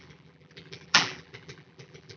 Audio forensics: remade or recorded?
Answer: remade